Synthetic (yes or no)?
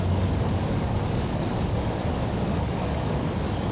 yes